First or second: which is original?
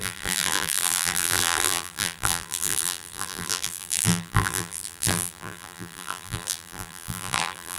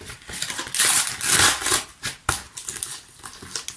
second